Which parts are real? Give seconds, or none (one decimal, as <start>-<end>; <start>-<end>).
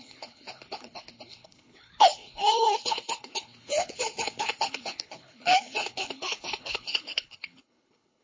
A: none